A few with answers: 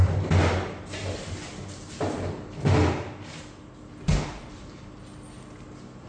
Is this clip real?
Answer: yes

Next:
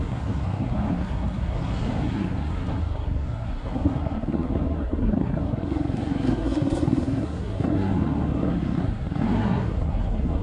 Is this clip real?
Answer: no